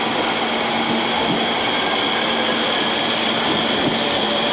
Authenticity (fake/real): real